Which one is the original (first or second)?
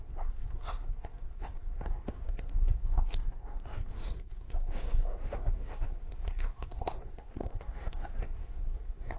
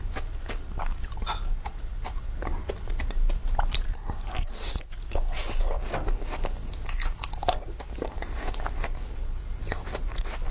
second